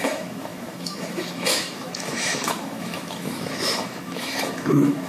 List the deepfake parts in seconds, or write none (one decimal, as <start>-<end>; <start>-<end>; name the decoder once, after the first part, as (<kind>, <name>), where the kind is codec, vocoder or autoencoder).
0.0-5.1 (autoencoder, DAC-VAE)